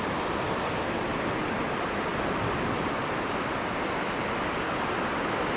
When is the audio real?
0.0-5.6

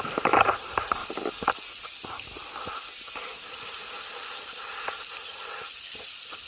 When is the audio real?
0.0-6.5

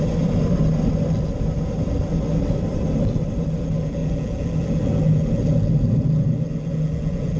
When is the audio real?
0.0-7.4